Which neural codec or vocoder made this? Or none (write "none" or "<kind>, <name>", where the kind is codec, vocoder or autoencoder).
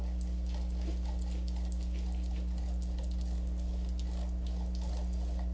none